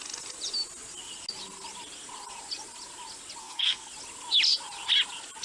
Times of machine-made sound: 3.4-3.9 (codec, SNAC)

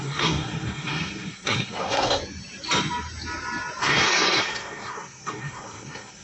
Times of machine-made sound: 0.0-2.2 (codec, SNAC); 3.8-6.2